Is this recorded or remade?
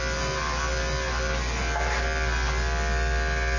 recorded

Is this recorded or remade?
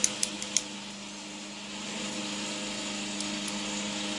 recorded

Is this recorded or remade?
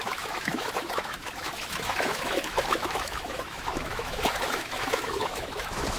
remade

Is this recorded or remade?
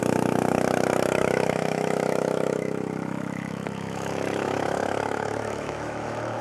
remade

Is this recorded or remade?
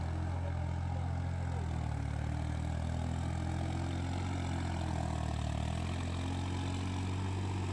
recorded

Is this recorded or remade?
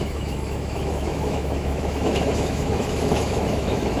remade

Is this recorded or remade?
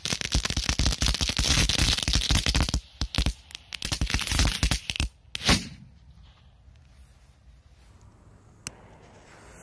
recorded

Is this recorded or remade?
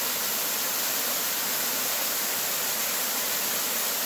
recorded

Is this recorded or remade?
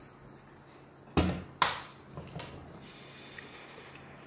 recorded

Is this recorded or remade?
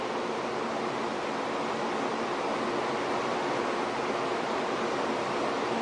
recorded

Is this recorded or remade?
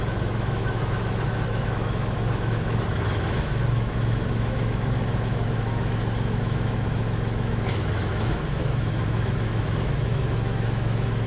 remade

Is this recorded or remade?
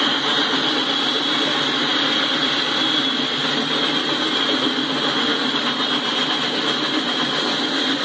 recorded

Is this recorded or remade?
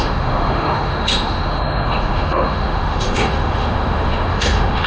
remade